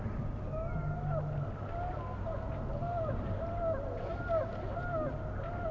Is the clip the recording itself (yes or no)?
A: yes